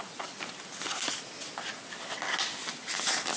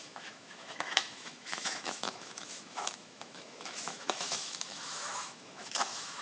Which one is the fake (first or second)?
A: second